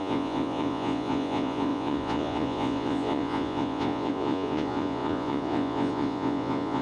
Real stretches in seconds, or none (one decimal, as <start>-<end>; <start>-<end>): none